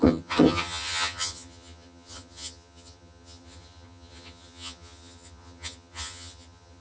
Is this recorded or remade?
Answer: remade